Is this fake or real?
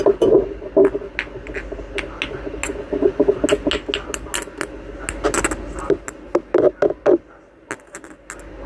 real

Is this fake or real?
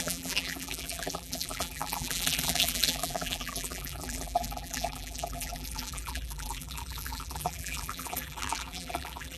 fake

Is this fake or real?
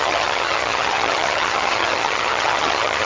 fake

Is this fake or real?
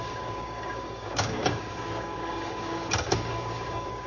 fake